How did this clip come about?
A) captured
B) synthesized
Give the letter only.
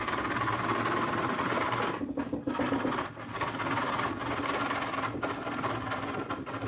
A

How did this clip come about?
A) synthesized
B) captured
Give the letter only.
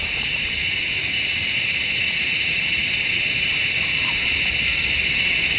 B